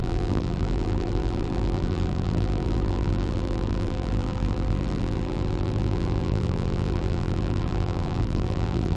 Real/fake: fake